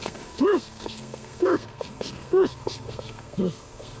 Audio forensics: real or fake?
fake